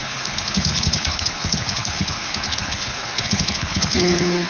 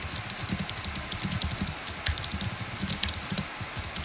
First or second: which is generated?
first